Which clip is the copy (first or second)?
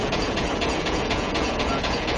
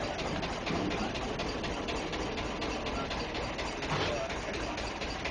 first